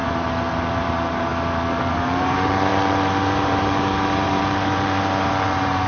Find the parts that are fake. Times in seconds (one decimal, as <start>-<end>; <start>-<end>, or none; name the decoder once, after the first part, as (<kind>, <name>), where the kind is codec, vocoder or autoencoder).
0.0-1.3 (vocoder, BigVGAN v2); 1.9-5.9